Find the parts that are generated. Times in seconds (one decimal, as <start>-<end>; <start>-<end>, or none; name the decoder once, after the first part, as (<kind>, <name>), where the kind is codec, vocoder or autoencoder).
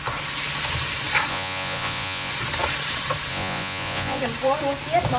1.3-2.3 (vocoder, Vocos); 3.3-4.2